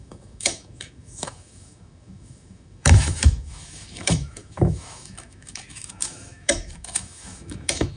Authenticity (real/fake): fake